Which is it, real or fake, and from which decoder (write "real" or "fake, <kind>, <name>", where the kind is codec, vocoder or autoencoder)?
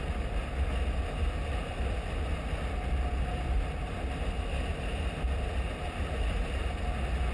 real